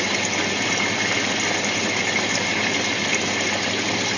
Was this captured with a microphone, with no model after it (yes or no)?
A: yes